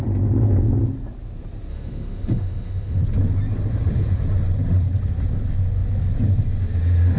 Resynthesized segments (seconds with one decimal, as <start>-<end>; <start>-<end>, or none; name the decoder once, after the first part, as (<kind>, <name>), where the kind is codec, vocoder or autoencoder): 1.7-3.0 (autoencoder, DAC-VAE)